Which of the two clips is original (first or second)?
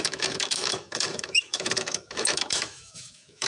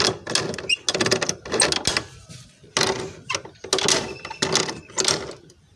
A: second